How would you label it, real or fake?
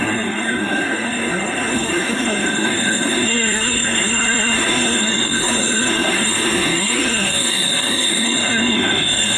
fake